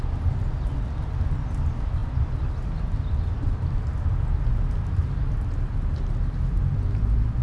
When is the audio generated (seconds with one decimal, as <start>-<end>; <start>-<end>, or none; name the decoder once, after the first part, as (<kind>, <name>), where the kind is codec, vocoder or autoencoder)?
none